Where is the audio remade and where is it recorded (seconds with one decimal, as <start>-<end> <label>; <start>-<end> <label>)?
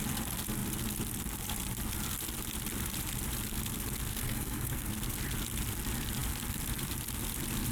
0.0-4.1 recorded; 4.1-5.0 remade; 5.0-7.7 recorded